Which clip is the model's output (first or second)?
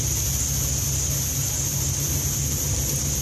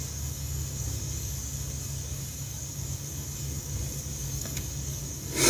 second